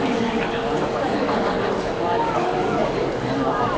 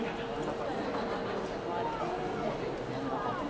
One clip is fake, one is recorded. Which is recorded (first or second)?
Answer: second